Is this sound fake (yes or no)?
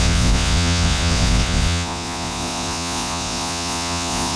yes